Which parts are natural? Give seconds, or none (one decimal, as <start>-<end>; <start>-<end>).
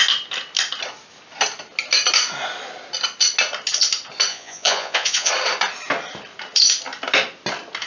0.0-4.3; 5.3-7.9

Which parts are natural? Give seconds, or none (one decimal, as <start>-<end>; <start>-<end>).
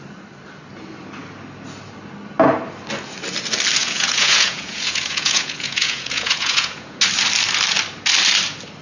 0.0-3.8; 7.0-8.8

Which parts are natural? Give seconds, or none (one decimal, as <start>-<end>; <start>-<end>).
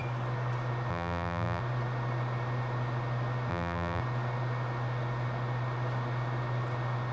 0.0-0.9; 1.6-3.5; 4.0-7.1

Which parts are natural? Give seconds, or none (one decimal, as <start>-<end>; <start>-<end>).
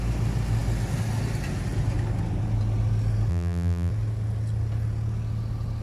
0.0-3.3; 3.9-5.8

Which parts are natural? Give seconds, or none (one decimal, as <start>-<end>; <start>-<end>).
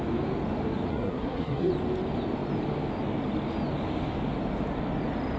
0.0-0.9; 1.7-5.4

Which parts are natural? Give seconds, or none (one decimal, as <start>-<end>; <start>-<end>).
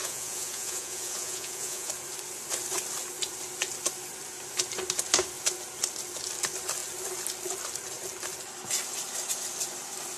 1.9-10.2